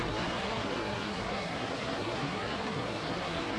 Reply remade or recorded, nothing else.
remade